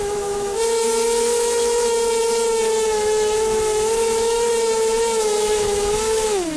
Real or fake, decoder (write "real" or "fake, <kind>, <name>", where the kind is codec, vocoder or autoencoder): fake, autoencoder, DAC-VAE